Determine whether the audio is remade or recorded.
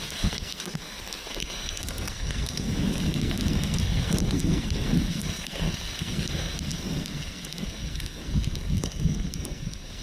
remade